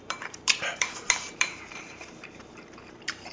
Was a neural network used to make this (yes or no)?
yes